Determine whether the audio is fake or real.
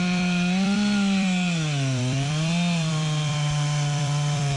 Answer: fake